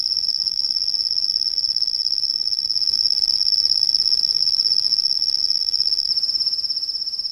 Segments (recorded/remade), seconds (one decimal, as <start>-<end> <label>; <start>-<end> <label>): 0.0-6.1 remade; 6.1-7.3 recorded